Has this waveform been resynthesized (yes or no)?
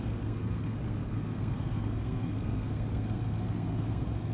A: yes